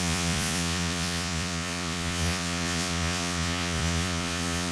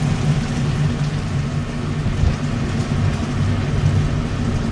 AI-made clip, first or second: first